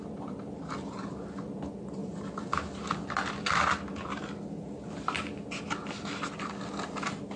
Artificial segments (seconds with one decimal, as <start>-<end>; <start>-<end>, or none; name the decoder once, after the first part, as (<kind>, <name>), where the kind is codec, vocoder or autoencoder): none